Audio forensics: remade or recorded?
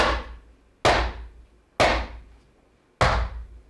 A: recorded